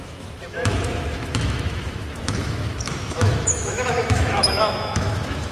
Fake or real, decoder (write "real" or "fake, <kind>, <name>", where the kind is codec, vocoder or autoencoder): fake, autoencoder, DAC-VAE